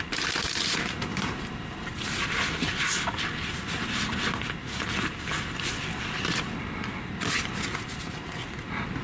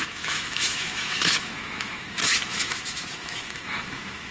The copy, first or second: second